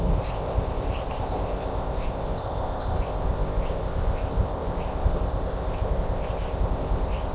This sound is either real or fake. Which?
fake